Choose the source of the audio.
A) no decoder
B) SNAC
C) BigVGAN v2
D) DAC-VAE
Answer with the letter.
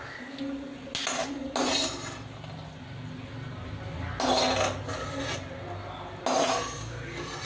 A